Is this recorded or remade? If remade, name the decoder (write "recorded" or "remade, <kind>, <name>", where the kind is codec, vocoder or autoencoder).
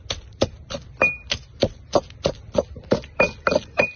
recorded